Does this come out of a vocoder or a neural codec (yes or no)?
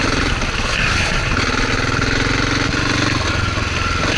no